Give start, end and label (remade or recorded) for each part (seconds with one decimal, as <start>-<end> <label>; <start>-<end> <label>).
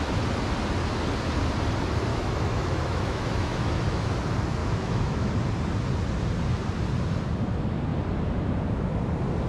0.0-2.1 recorded; 2.1-4.1 remade; 4.1-4.6 recorded; 4.6-5.3 remade; 5.3-9.5 recorded